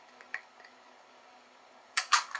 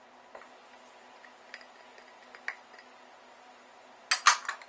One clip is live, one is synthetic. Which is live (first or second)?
second